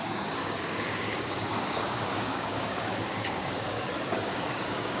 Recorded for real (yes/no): no